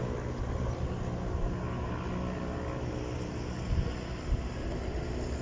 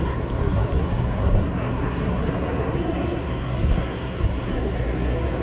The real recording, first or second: first